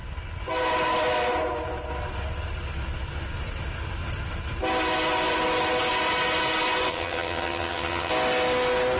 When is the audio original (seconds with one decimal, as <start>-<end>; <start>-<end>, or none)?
0.0-6.9; 8.1-9.0